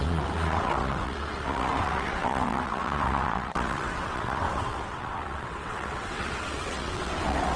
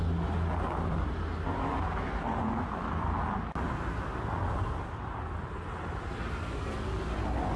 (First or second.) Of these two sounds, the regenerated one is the first